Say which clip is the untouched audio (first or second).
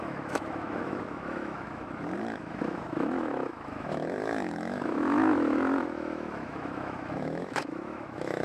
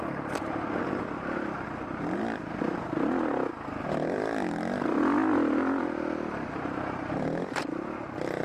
second